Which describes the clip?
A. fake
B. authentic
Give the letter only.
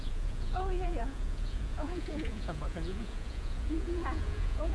A